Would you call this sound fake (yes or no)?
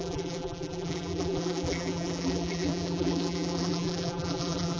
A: yes